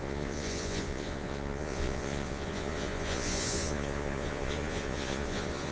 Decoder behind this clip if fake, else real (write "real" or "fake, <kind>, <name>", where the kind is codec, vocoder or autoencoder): fake, vocoder, Vocos